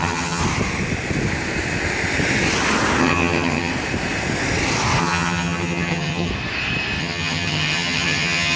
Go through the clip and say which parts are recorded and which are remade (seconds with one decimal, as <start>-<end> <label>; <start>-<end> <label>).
0.0-0.4 remade; 0.4-3.0 recorded; 3.0-3.7 remade; 3.7-5.0 recorded; 5.0-6.3 remade; 6.3-7.0 recorded; 7.0-8.6 remade